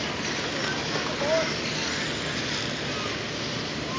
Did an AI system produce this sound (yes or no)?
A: no